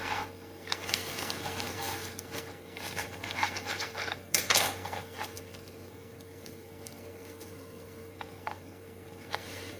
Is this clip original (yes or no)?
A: no